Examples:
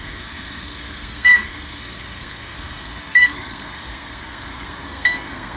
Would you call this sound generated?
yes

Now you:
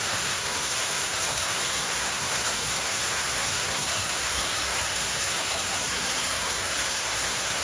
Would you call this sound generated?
yes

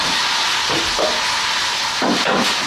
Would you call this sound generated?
no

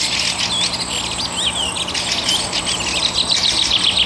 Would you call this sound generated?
no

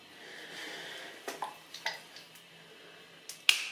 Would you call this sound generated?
no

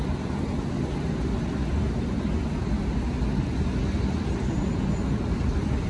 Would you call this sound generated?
no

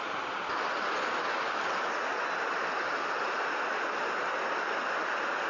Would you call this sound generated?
no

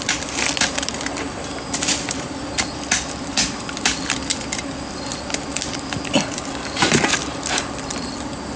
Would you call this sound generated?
no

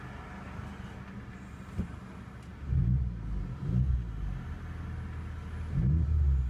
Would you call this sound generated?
no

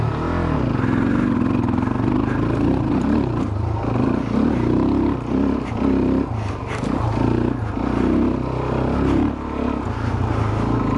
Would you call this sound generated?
no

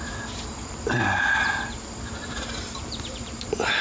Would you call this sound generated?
yes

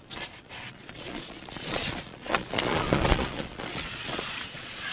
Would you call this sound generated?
yes